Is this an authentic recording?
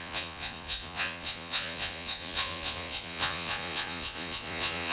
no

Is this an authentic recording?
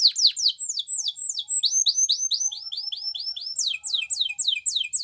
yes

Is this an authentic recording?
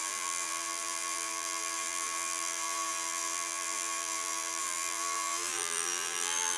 no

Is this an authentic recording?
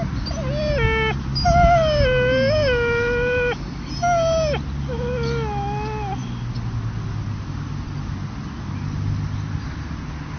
yes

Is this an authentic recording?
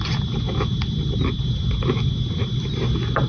yes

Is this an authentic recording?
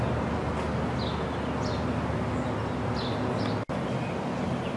yes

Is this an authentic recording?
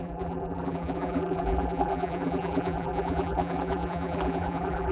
no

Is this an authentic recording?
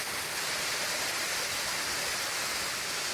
yes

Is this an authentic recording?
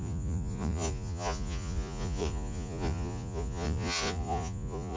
no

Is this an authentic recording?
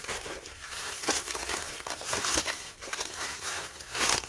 no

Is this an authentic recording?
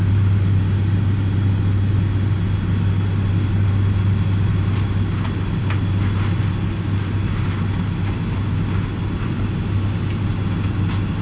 yes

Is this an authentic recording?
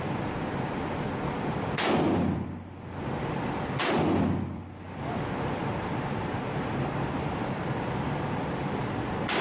no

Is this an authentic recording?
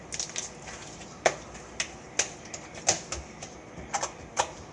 yes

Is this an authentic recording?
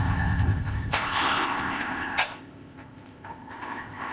no